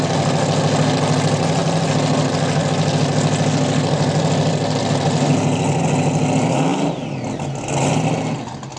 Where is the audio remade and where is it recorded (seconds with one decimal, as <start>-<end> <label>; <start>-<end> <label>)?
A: 0.0-8.8 recorded